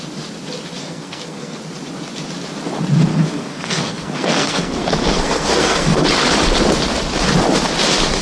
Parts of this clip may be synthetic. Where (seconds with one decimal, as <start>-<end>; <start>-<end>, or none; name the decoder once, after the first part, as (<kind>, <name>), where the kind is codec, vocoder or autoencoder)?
0.8-1.6 (codec, SNAC); 3.1-6.0